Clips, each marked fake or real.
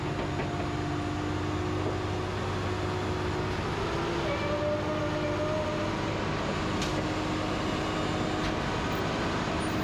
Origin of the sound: real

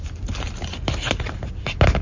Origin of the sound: real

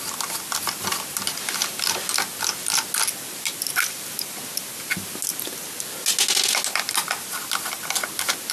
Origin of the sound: real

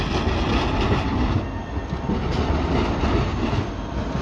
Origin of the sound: real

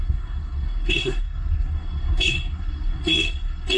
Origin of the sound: fake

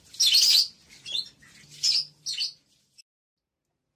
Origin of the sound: real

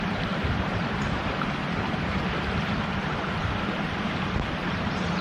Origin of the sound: fake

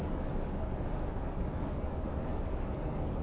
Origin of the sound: fake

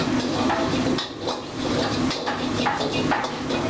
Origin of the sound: real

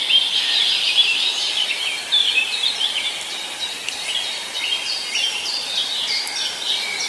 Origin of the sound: fake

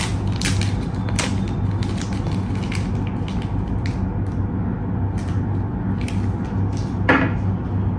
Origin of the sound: real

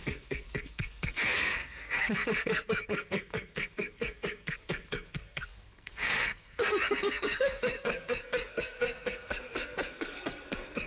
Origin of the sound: fake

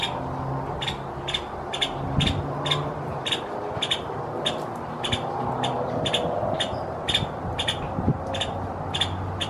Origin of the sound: real